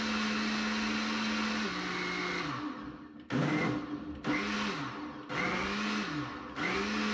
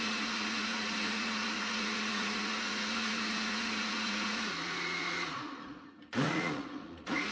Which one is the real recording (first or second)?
first